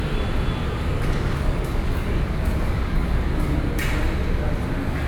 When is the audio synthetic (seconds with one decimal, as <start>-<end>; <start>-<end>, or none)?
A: 0.6-3.7